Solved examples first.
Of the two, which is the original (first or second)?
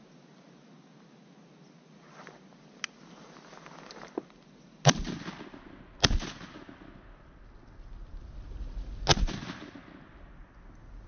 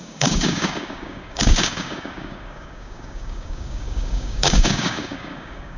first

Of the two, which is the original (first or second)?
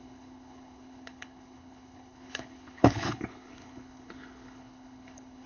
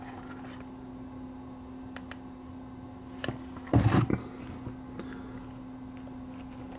second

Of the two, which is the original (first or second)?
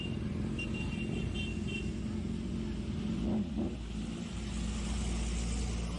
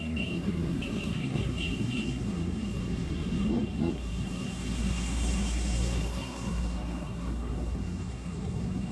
first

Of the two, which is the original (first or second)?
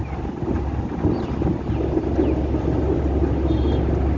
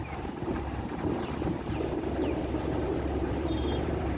first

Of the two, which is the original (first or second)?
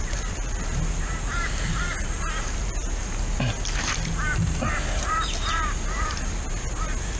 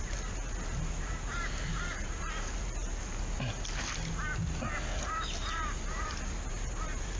second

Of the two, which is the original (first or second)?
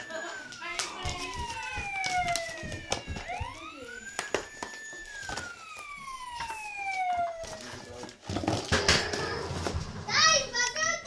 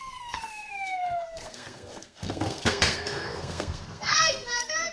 first